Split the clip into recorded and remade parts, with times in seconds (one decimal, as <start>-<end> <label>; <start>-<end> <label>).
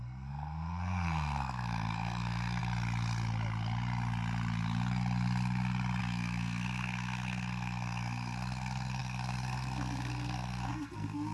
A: 0.0-2.6 remade; 2.6-6.0 recorded; 6.0-11.3 remade